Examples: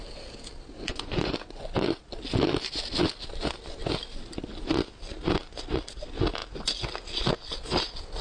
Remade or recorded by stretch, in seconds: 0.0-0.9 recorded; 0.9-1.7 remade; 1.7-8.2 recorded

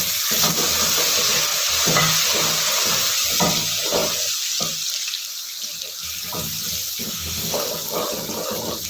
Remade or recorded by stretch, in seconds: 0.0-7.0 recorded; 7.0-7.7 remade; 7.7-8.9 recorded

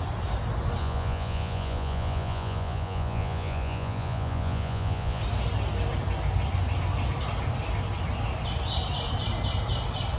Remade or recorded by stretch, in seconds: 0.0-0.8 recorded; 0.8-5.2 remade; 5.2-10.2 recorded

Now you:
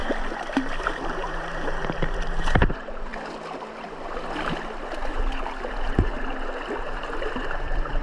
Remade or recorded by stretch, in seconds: 0.0-0.8 recorded; 0.8-3.1 remade; 3.1-5.1 recorded; 5.1-6.1 remade; 6.1-6.8 recorded; 6.8-8.0 remade

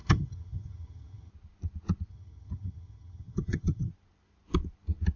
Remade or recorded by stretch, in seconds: 0.0-1.3 remade; 1.3-2.1 recorded; 2.1-3.9 remade; 3.9-5.2 recorded

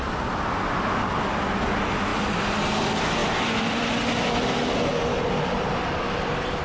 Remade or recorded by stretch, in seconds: 0.0-3.2 recorded; 3.2-3.9 remade; 3.9-6.6 recorded

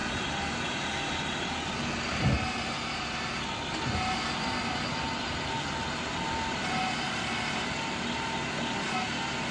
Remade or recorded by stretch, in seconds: 0.0-9.5 recorded

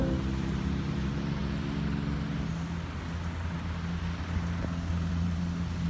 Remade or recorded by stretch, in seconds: 0.0-1.4 remade; 1.4-4.9 recorded; 4.9-5.9 remade